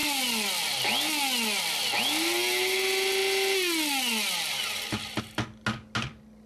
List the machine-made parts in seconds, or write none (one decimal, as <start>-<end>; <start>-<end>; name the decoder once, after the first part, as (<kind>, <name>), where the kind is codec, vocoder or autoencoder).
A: none